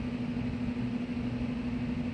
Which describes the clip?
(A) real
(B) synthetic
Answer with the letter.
A